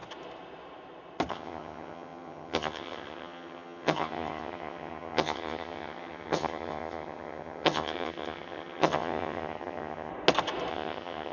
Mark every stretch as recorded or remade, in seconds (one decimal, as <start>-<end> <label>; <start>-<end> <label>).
0.0-1.3 recorded; 1.3-10.1 remade; 10.1-10.7 recorded; 10.7-11.3 remade